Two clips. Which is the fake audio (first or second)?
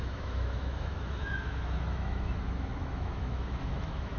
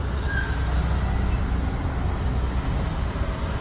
first